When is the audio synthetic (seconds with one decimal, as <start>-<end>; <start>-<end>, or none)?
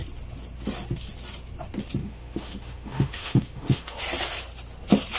2.0-4.0